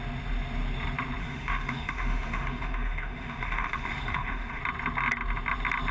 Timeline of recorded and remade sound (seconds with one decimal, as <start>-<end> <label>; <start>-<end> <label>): 0.0-1.2 recorded; 1.2-4.6 remade; 4.6-5.9 recorded